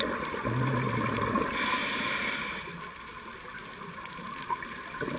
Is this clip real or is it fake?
real